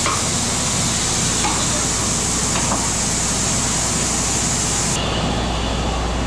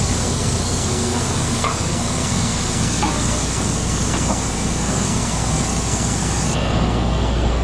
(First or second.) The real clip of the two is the first